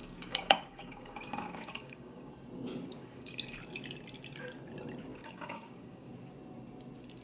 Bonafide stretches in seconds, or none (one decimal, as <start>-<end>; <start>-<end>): 2.3-3.0; 3.6-5.1; 6.1-7.2